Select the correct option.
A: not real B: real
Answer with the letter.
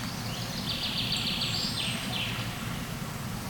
B